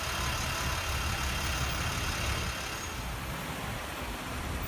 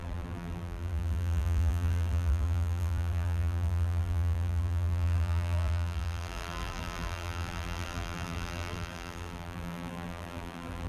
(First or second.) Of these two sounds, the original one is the first